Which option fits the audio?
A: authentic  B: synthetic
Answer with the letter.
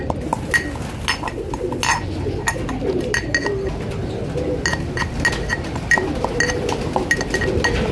A